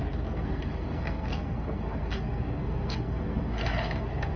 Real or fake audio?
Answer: fake